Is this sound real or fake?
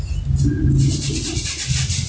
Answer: real